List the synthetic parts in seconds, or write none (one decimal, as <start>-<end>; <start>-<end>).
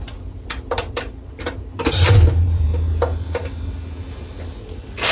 0.0-2.7